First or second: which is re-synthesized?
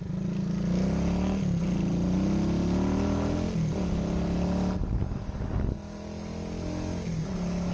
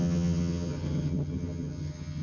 second